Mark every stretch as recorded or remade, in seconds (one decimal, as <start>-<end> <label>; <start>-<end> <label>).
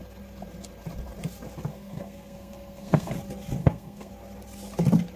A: 0.0-1.7 recorded; 1.7-3.1 remade; 3.1-3.6 recorded; 3.6-4.1 remade; 4.1-5.2 recorded